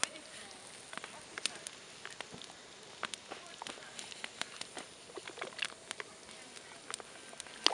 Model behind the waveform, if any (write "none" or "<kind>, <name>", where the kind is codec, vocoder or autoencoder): none